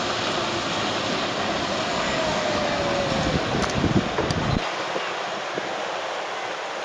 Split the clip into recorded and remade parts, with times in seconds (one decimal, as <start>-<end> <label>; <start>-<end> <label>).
0.0-1.9 recorded; 1.9-2.6 remade; 2.6-6.8 recorded